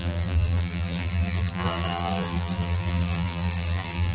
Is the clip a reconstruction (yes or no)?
yes